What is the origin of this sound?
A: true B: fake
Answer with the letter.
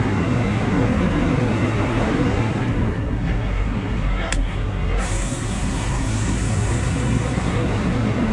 B